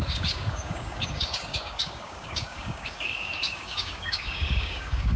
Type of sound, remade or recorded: remade